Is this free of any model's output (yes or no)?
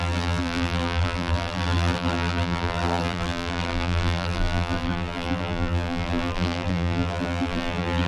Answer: no